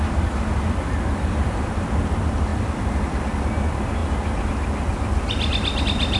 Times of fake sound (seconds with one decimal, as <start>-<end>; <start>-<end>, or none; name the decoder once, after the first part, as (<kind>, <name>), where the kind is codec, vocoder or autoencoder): 0.0-4.0 (vocoder, BigVGAN v2); 5.8-6.2